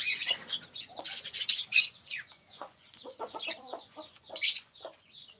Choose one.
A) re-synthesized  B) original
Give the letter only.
A